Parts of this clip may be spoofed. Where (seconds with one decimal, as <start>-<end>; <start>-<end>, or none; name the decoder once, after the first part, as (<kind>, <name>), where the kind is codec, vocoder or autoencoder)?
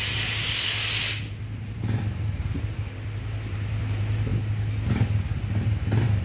none